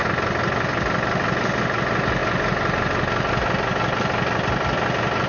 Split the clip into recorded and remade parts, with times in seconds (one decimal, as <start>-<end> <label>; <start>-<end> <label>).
0.0-5.3 recorded